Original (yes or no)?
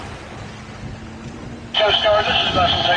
yes